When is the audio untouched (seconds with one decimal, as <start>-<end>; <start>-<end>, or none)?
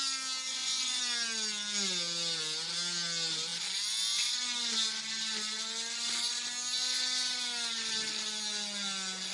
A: 0.0-0.5; 1.0-9.3